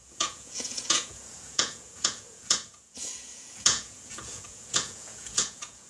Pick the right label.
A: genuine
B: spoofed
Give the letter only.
B